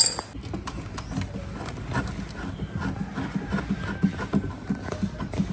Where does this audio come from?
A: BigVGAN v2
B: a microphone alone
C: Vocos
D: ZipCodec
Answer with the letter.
B